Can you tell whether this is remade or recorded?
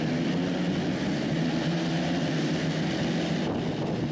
recorded